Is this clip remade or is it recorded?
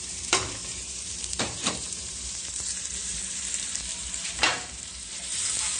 remade